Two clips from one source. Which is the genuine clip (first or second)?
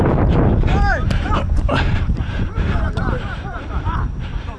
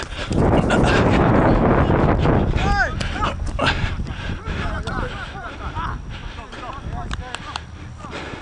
second